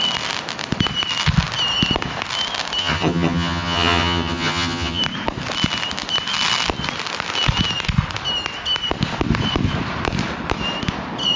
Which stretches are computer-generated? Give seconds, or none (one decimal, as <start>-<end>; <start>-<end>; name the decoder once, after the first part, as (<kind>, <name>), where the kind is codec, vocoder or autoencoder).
2.8-5.0 (vocoder, HiFi-GAN)